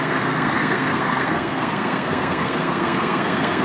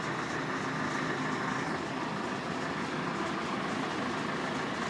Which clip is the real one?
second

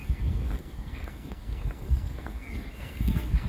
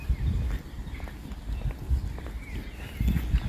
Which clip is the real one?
second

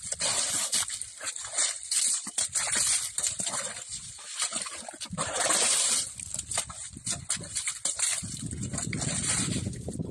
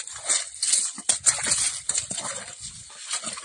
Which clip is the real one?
second